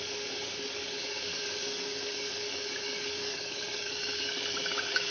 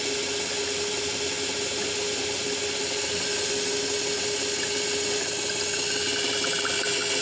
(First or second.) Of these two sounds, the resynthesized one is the first